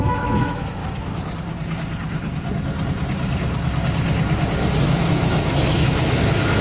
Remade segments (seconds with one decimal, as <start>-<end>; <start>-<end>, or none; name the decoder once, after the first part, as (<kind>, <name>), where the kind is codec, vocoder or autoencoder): 0.0-0.8 (autoencoder, DAC-VAE); 4.8-6.6